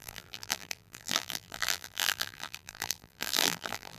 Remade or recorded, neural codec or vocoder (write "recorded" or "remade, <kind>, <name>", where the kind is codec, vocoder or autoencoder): remade, vocoder, BigVGAN v2